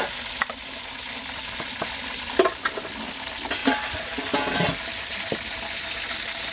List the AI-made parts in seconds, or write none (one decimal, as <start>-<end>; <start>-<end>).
none